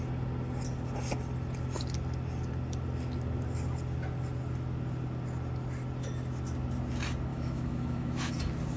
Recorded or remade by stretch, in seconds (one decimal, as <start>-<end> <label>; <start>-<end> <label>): 0.0-7.3 recorded; 7.3-8.3 remade; 8.3-8.8 recorded